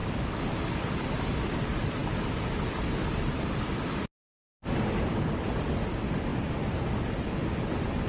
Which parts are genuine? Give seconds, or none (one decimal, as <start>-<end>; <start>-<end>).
0.0-8.1